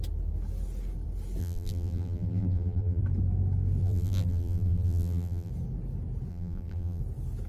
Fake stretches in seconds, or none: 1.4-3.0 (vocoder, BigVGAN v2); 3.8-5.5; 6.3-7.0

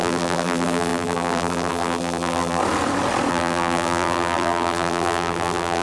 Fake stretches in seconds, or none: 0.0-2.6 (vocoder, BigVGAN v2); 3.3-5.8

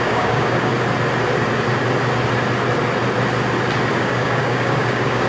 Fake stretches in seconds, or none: 0.0-0.7 (codec, DAC); 3.9-5.3

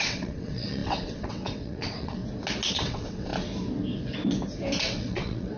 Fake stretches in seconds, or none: 0.0-2.2 (vocoder, WaveNeXt); 2.7-3.3; 4.8-5.6

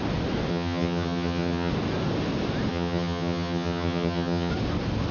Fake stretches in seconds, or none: 0.5-1.7 (vocoder, HiFi-GAN); 2.7-4.5